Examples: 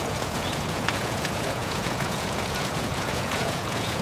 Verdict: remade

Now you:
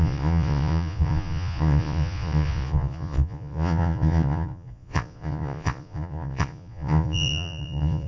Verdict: remade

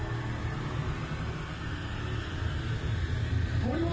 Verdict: recorded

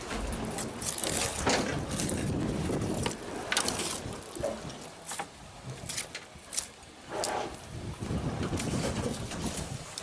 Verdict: recorded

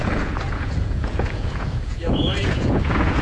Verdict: remade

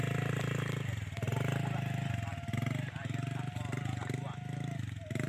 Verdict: recorded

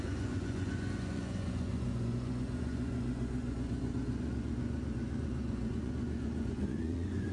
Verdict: remade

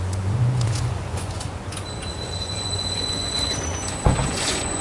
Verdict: remade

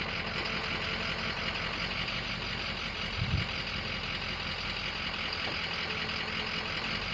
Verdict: recorded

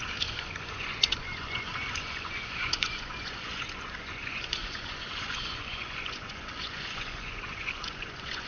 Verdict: remade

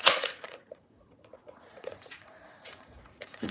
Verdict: remade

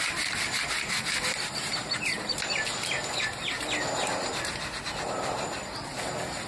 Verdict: recorded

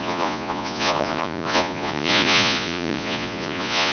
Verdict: remade